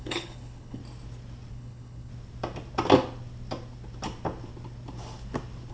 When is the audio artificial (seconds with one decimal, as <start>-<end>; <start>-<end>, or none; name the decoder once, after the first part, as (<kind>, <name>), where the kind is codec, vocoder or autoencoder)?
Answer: 0.0-0.8 (codec, HILCodec); 1.5-2.1